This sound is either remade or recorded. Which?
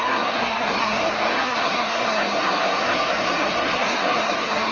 remade